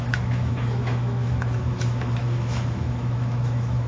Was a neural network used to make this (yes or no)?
yes